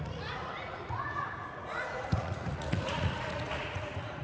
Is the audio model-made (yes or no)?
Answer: yes